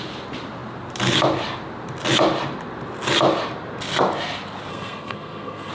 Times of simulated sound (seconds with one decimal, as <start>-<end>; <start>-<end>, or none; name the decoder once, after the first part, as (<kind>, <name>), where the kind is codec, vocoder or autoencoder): 4.7-5.7 (codec, SNAC)